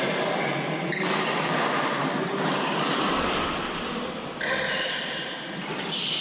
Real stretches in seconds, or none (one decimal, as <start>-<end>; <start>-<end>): 0.0-6.2